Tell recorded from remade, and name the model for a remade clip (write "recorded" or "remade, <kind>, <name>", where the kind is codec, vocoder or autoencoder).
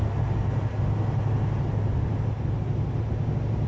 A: recorded